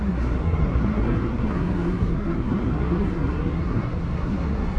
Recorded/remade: remade